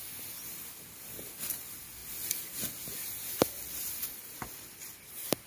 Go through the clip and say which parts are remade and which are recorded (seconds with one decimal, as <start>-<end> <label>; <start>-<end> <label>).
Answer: 0.0-5.5 recorded